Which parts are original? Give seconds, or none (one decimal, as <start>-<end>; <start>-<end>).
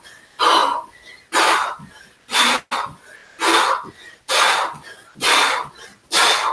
0.0-6.5